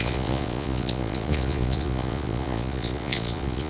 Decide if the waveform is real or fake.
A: fake